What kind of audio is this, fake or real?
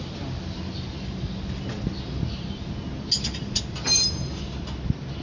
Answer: real